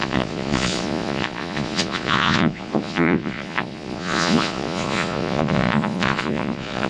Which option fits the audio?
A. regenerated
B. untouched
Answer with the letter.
A